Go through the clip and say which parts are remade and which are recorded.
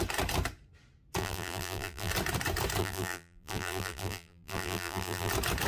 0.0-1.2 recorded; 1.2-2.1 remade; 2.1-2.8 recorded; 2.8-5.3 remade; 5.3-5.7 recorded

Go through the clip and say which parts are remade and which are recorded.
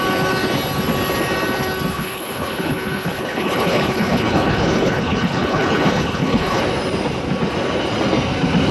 0.0-1.9 recorded; 1.9-6.6 remade; 6.6-8.7 recorded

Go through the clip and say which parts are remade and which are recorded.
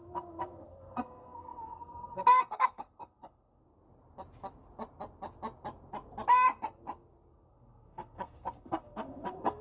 0.0-3.6 remade; 3.6-7.3 recorded; 7.3-9.6 remade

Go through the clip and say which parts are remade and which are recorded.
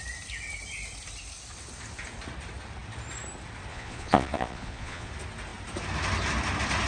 0.0-3.7 recorded; 3.7-5.1 remade; 5.1-6.9 recorded